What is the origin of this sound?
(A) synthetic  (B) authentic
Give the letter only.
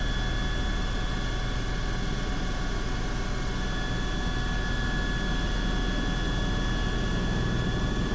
B